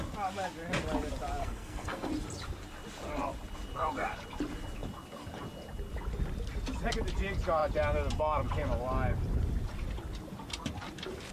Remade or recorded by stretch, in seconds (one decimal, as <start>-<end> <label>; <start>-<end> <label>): 0.0-1.4 recorded; 1.4-2.1 remade; 2.1-11.3 recorded